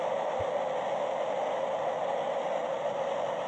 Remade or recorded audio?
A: recorded